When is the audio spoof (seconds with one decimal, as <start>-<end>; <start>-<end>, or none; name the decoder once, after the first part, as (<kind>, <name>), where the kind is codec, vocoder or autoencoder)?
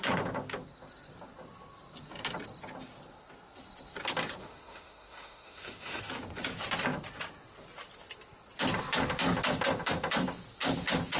4.4-6.0 (autoencoder, DAC-VAE)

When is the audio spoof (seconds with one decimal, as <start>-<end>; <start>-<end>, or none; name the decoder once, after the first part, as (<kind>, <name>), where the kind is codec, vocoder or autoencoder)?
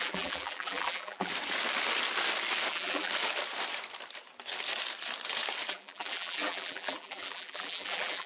0.0-1.3 (vocoder, BigVGAN v2); 2.7-3.1; 5.7-8.3